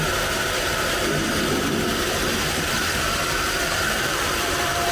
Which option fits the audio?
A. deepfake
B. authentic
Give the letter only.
A